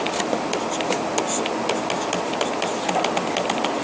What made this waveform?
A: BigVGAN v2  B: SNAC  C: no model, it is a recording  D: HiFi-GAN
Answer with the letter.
C